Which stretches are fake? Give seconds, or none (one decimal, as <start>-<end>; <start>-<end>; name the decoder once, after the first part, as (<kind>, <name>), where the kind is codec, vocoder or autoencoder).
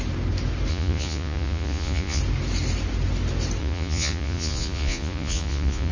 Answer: 0.7-2.2 (vocoder, Vocos); 3.6-5.9